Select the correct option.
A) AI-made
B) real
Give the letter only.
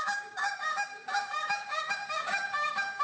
A